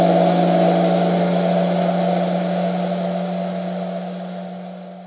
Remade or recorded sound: recorded